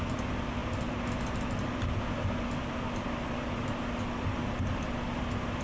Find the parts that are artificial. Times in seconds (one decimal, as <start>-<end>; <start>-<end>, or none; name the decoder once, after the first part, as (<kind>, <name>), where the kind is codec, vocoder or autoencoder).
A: none